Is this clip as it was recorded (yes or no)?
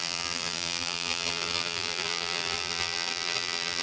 no